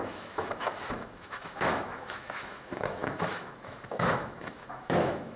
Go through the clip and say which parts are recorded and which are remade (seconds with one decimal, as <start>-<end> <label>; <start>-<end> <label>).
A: 0.0-5.4 remade